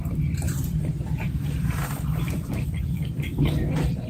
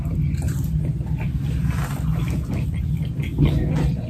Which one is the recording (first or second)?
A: second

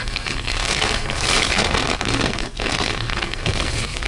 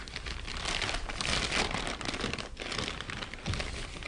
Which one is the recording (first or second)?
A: second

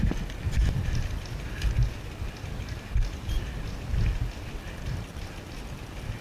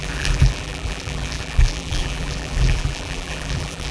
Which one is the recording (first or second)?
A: first